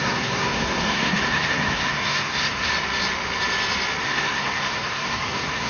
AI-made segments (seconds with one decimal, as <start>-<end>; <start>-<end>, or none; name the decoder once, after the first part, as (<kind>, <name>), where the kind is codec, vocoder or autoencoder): 0.0-2.7 (codec, SNAC); 4.0-5.7